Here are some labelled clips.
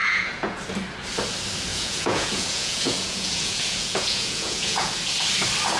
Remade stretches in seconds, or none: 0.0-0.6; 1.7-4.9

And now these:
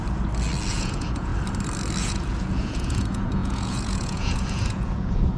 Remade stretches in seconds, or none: 0.7-1.3; 2.0-5.4

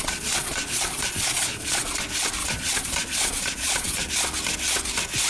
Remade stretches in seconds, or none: 0.0-2.0; 2.4-4.1

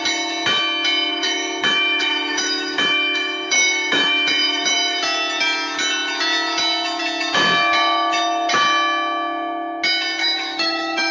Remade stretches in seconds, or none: 1.1-5.0; 10.2-11.1

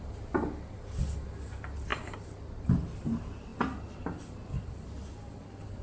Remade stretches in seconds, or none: none

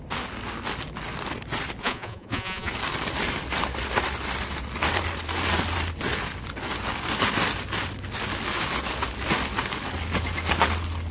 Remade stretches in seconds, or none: 1.8-2.7

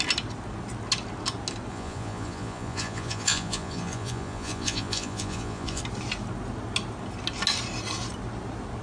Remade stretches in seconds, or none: 1.7-5.8